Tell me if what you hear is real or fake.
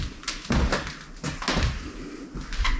real